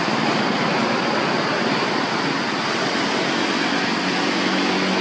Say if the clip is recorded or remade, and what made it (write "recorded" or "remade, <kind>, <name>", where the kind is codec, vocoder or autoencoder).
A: recorded